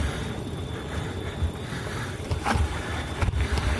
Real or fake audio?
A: fake